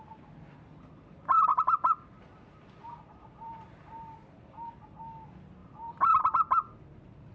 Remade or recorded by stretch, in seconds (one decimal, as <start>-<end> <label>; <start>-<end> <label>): 0.0-1.5 recorded; 1.5-4.3 remade; 4.3-5.6 recorded; 5.6-6.2 remade; 6.2-7.3 recorded